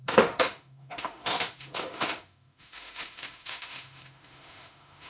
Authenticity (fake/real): fake